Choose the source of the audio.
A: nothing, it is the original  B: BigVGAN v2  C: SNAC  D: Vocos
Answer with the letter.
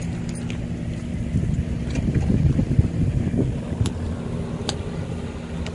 A